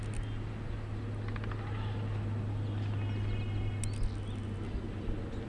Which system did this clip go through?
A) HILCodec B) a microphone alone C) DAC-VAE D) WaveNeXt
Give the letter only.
B